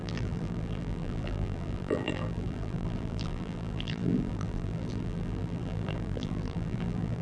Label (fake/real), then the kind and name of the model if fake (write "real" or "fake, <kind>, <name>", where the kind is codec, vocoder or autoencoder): fake, vocoder, BigVGAN v2